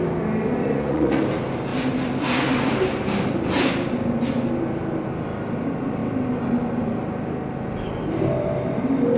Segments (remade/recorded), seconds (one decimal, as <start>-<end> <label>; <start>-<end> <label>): 0.0-0.6 recorded; 0.6-1.2 remade; 1.2-9.2 recorded